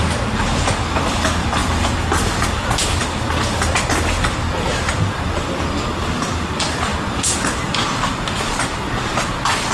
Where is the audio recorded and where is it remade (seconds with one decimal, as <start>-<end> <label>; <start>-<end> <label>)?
0.0-9.7 recorded